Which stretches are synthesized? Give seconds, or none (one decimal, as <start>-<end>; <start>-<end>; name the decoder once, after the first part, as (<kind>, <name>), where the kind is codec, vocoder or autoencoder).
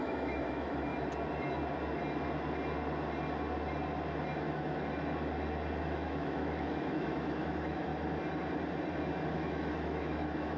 0.0-0.9 (autoencoder, DAC-VAE); 4.4-4.9; 5.8-7.9; 9.3-10.6